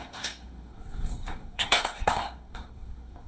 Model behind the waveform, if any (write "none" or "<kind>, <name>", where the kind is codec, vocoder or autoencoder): codec, SNAC